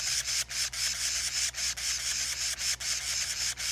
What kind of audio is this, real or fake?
real